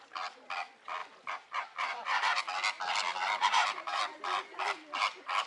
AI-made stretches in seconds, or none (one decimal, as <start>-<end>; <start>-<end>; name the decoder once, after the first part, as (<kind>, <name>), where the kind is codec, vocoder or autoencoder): 1.0-2.4 (vocoder, BigVGAN v2); 3.4-4.0